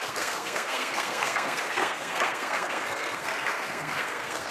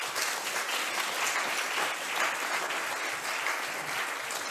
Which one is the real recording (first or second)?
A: second